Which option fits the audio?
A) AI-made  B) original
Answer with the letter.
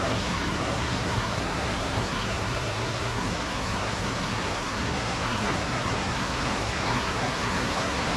A